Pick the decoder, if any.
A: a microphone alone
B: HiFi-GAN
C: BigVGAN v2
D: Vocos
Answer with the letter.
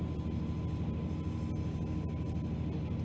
A